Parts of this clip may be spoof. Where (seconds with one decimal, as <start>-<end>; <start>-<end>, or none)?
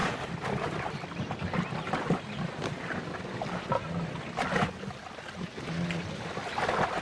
0.0-0.9